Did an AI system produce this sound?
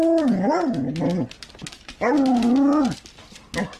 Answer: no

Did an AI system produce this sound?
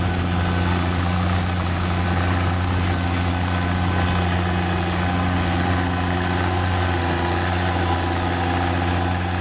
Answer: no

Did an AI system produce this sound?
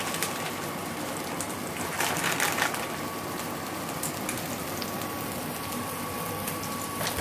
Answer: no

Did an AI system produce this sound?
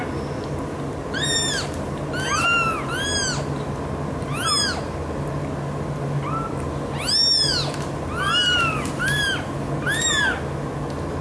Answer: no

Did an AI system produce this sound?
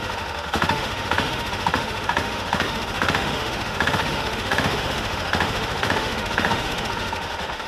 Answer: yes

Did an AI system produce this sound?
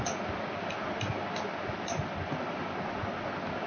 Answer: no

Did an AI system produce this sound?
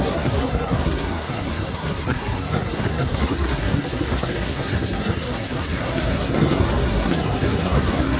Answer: yes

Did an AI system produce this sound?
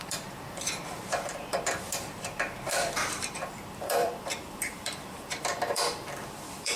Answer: yes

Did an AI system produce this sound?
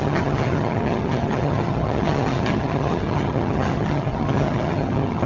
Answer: yes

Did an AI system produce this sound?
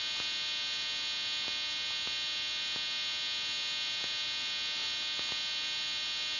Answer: no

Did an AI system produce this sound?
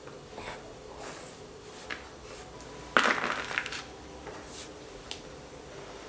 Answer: no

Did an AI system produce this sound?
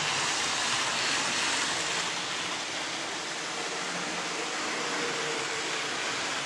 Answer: no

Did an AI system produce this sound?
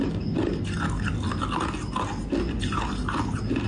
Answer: no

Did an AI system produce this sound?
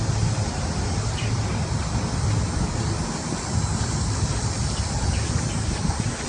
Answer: no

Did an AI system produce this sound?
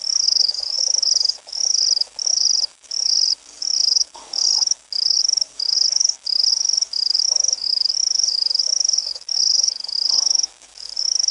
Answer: yes